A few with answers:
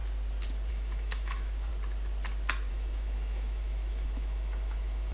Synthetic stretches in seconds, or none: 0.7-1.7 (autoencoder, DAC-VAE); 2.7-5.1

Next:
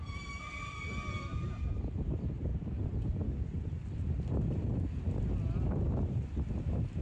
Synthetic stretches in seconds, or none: none

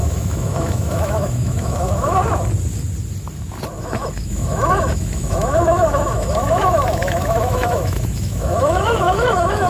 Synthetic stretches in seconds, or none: 0.0-2.2 (autoencoder, DAC-VAE); 3.8-9.7